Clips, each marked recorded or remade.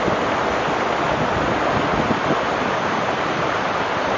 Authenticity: recorded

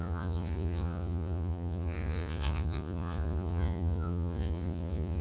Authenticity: remade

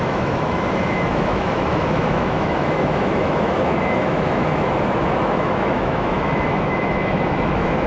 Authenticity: remade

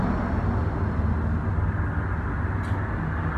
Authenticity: recorded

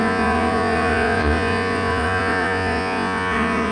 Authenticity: remade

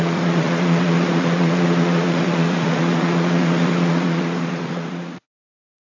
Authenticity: remade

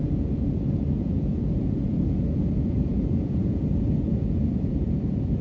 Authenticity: remade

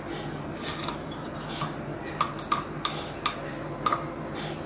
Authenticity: recorded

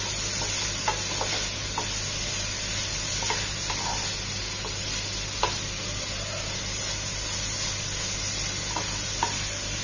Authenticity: recorded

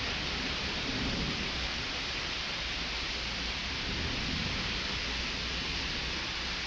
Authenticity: recorded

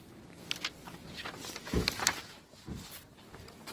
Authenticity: recorded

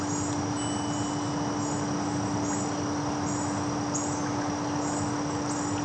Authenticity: recorded